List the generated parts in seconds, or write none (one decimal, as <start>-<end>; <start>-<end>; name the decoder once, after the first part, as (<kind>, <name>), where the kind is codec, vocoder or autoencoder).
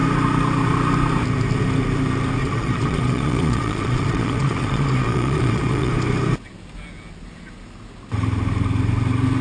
2.4-5.9 (vocoder, Vocos)